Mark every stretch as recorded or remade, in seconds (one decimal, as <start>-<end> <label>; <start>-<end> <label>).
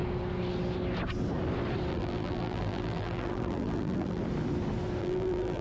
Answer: 0.0-1.9 recorded; 1.9-4.2 remade; 4.2-5.0 recorded; 5.0-5.6 remade